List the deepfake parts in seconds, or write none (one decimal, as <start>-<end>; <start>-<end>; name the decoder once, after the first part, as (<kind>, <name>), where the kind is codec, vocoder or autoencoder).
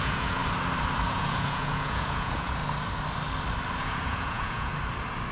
0.0-0.4 (vocoder, Vocos); 1.1-2.6; 3.8-4.7